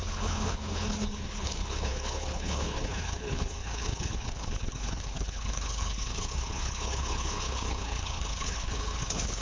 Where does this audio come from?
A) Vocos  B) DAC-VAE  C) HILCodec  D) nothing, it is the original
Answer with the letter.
C